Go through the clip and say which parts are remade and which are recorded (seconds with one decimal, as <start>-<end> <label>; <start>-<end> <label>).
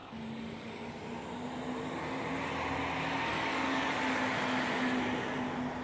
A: 0.0-0.9 remade; 0.9-3.3 recorded; 3.3-3.9 remade; 3.9-5.8 recorded